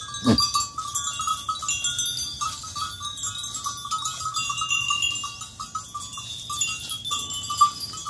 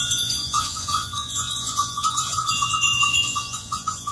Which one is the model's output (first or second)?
second